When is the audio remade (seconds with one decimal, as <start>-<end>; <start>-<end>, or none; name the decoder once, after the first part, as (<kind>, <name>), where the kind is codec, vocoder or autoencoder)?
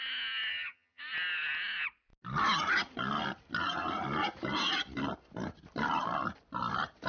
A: 0.5-1.0 (vocoder, HiFi-GAN)